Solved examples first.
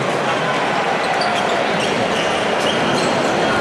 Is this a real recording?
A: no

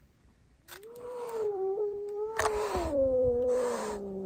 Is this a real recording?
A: no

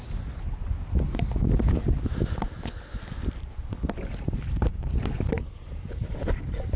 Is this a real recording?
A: yes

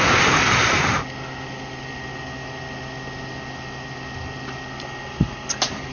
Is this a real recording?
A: yes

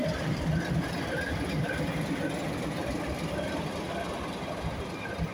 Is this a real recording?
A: no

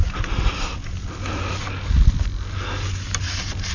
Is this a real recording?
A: yes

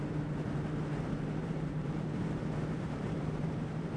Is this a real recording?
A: no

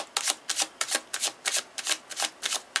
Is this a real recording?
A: no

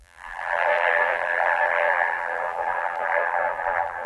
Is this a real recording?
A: no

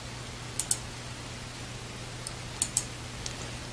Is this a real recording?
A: yes